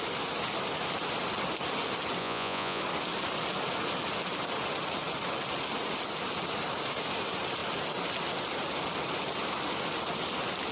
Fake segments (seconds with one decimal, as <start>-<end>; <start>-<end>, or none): 2.2-2.8